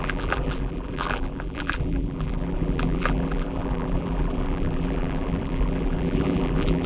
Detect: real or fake fake